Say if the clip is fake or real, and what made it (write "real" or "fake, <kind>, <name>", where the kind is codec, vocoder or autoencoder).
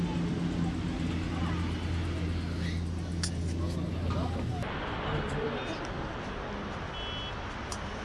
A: real